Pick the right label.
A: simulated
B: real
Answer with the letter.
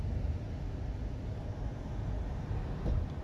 B